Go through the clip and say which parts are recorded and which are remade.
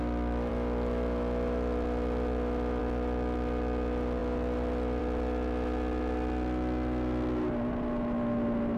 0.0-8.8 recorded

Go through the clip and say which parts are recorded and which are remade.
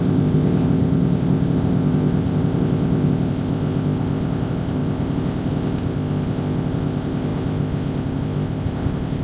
0.0-9.2 remade